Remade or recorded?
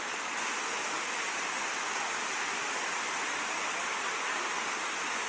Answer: recorded